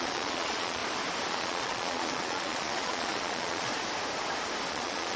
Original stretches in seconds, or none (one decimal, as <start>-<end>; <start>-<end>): 0.8-1.3; 3.7-4.7